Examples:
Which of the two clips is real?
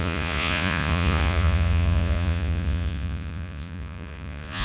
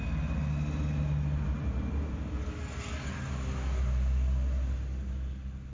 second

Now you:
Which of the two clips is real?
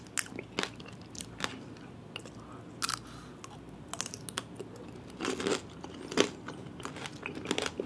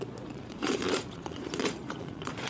first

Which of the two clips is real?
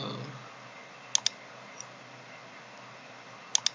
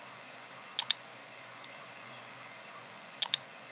first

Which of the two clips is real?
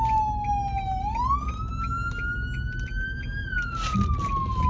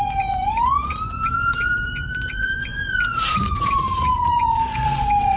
first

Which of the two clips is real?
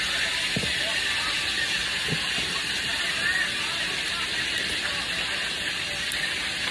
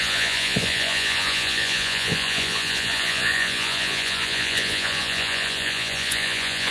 first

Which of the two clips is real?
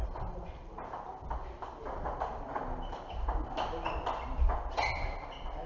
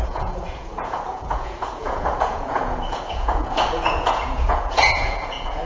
first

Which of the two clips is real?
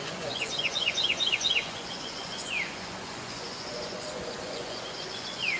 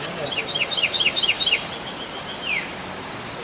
second